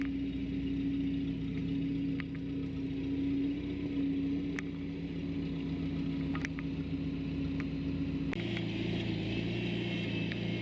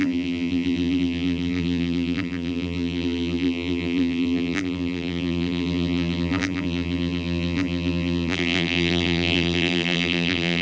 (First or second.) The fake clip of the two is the second